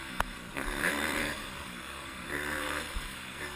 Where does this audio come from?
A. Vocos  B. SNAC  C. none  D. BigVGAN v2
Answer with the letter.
B